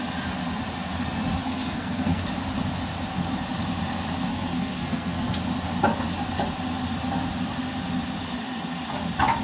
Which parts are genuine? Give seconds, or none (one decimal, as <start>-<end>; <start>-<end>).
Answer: 0.0-1.4; 2.2-4.3; 5.4-9.4